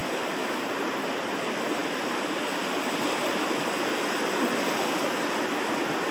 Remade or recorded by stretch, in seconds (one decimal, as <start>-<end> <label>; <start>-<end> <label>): 0.0-6.1 recorded